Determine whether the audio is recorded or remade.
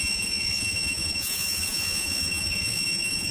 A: remade